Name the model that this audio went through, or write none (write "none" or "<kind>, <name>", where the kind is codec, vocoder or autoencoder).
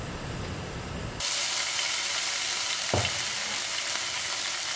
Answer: none